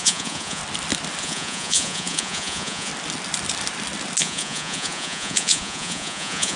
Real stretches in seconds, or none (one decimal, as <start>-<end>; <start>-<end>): 0.6-1.2; 2.9-4.2